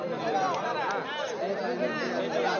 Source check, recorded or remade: recorded